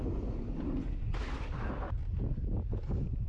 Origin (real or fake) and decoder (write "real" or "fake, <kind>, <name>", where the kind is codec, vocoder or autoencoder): real